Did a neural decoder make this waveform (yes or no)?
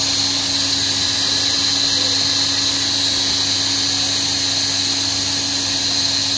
no